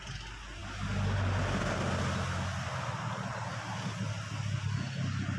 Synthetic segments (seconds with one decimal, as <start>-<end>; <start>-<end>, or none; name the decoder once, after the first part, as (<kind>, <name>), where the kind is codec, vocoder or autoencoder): none